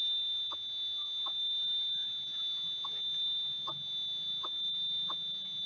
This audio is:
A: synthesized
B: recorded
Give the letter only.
B